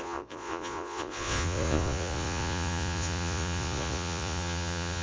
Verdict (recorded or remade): remade